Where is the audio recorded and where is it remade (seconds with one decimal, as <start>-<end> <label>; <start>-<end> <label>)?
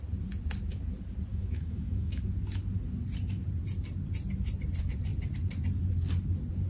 0.0-1.3 recorded; 1.3-2.2 remade; 2.2-6.7 recorded